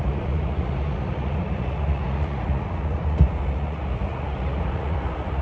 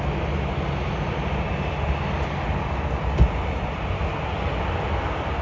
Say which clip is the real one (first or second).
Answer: second